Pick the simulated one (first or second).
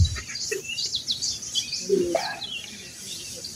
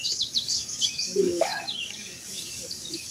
second